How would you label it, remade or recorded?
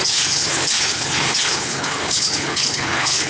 remade